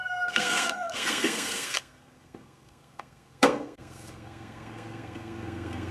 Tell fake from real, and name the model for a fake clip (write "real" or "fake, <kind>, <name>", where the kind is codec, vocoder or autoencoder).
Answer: fake, codec, SNAC